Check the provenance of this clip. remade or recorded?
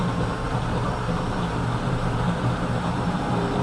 remade